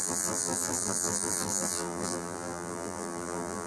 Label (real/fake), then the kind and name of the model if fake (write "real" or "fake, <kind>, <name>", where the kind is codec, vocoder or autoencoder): fake, vocoder, BigVGAN v2